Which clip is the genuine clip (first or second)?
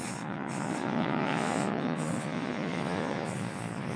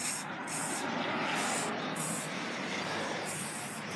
second